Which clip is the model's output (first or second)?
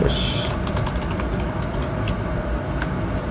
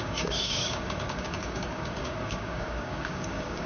second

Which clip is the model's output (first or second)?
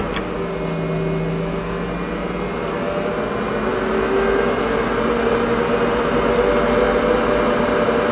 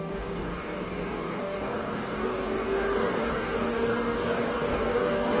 second